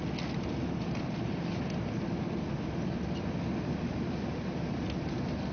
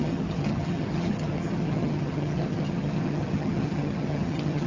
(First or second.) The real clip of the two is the first